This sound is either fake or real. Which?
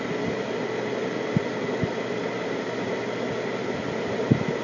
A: real